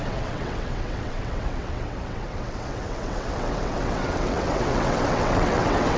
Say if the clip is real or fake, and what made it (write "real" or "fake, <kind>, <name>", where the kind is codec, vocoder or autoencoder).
fake, vocoder, WaveNeXt